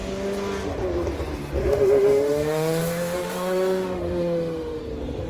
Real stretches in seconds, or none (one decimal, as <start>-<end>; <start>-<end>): 0.0-1.6; 4.8-5.3